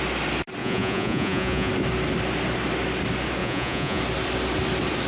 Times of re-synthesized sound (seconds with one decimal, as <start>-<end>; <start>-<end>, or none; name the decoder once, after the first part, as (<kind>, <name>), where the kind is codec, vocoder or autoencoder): 0.6-1.7 (vocoder, Vocos); 3.4-4.0